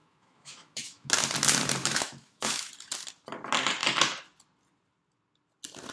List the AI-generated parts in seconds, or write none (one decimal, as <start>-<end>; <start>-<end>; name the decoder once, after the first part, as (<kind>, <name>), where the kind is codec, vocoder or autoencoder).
0.0-1.1 (autoencoder, DAC-VAE); 1.8-2.7